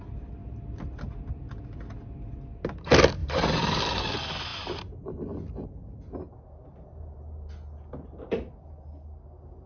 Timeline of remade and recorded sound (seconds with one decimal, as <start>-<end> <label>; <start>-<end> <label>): 0.0-3.2 recorded; 3.2-3.8 remade; 3.8-9.7 recorded